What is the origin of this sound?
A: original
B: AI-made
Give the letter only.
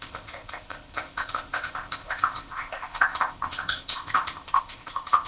B